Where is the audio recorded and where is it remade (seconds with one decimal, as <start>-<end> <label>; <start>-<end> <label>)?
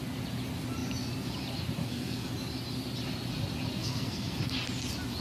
0.0-1.8 recorded; 1.8-2.3 remade; 2.3-3.8 recorded; 3.8-4.4 remade; 4.4-5.2 recorded